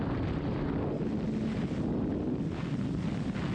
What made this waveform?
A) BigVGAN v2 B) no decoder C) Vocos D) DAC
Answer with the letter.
B